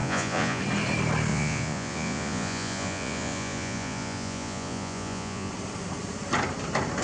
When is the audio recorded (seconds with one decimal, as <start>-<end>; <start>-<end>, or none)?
0.6-1.3; 5.5-7.0